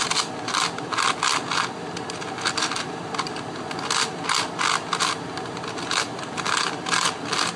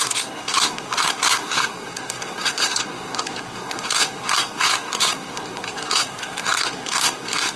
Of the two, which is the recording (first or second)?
first